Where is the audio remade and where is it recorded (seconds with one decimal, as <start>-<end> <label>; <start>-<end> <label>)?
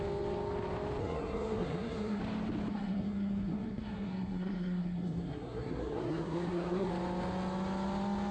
0.0-1.0 recorded; 1.0-2.2 remade; 2.2-2.7 recorded; 2.7-6.9 remade; 6.9-8.3 recorded